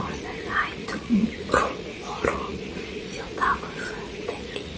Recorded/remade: remade